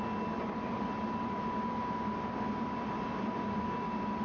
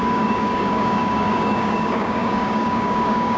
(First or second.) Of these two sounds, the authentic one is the first